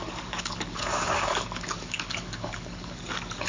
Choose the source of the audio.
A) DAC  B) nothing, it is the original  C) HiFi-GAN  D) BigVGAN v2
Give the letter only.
A